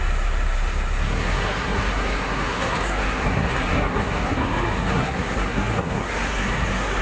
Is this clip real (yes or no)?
no